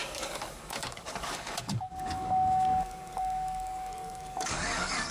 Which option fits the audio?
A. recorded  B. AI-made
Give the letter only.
B